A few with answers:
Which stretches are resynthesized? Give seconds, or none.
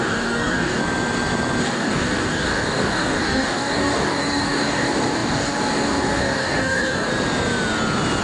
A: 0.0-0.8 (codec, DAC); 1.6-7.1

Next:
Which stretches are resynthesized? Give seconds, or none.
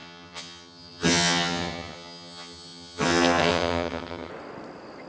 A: 0.0-4.3 (vocoder, HiFi-GAN)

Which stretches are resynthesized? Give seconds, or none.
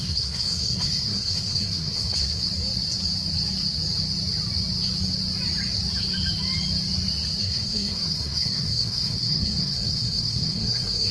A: 0.0-2.4 (codec, SNAC); 7.4-11.1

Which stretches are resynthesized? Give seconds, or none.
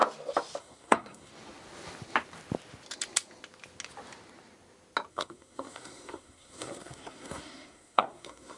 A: 0.6-1.3 (codec, SNAC); 5.1-8.6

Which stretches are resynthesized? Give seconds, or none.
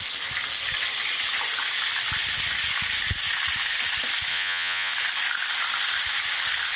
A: 4.3-4.9 (vocoder, Vocos)